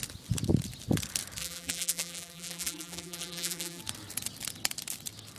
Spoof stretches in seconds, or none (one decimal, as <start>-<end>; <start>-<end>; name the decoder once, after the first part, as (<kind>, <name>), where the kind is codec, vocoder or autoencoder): 1.4-3.8 (vocoder, BigVGAN v2)